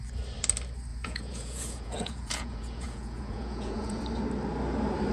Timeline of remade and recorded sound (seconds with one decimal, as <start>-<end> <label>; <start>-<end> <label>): 0.0-0.9 recorded; 0.9-4.0 remade; 4.0-5.1 recorded

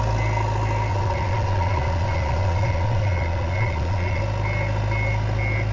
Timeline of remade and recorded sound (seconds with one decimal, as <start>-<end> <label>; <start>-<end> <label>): 0.0-0.9 recorded; 0.9-4.2 remade; 4.2-5.7 recorded